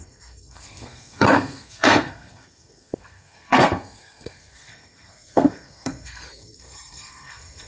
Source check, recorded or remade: remade